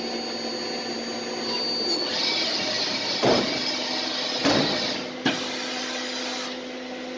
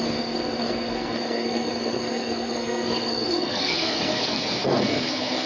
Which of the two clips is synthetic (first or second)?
second